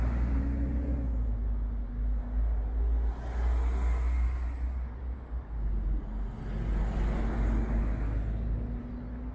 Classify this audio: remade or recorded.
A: recorded